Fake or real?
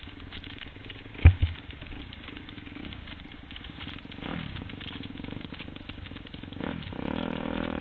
fake